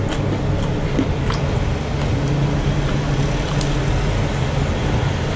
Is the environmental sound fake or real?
real